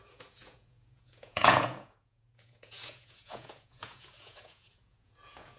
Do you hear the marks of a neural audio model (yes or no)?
yes